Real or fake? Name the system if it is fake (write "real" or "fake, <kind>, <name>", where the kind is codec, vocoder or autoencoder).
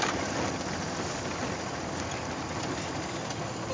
real